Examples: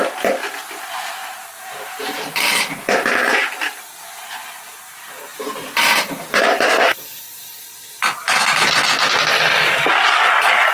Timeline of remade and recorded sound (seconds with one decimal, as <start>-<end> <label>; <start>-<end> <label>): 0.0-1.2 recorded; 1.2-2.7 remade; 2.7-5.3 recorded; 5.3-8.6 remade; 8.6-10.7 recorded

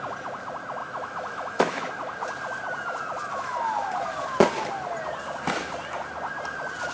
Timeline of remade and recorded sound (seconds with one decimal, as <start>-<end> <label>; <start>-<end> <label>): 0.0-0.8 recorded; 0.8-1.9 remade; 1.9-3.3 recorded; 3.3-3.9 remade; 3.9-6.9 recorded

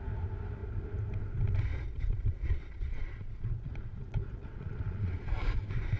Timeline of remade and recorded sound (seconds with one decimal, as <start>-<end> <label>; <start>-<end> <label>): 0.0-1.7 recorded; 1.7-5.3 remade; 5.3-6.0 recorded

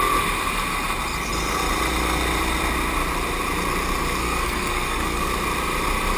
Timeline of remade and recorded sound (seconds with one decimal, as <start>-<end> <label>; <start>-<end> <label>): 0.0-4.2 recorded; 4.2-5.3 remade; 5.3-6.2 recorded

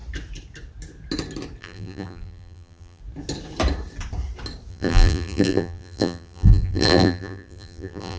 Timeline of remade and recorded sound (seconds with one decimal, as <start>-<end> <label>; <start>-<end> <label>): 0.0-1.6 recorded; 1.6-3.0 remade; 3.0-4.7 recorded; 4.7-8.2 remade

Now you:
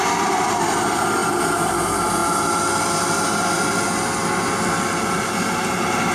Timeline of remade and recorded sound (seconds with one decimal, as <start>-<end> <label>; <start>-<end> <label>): 0.0-1.2 recorded; 1.2-1.7 remade; 1.7-6.1 recorded

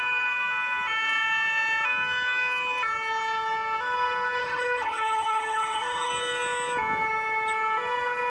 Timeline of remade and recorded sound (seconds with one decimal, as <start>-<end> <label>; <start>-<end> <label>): 0.0-4.4 recorded; 4.4-6.1 remade; 6.1-8.3 recorded